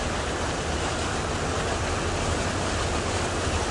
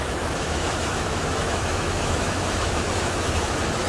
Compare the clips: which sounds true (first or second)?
first